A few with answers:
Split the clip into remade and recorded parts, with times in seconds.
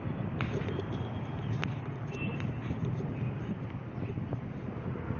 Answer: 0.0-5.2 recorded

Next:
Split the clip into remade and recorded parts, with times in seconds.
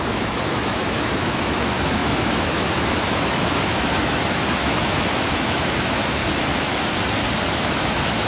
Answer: 0.0-6.2 remade; 6.2-7.5 recorded; 7.5-8.3 remade